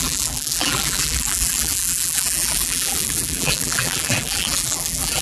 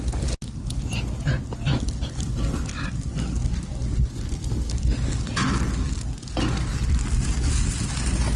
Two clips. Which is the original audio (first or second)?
second